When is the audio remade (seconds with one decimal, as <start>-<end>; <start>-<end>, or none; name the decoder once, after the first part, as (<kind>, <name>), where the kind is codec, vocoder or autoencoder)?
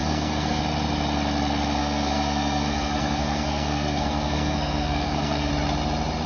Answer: 0.0-0.6 (codec, SNAC); 1.8-5.5